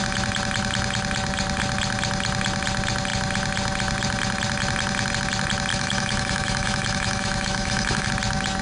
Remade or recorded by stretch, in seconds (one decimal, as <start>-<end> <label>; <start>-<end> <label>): 0.0-5.7 recorded; 5.7-8.1 remade; 8.1-8.6 recorded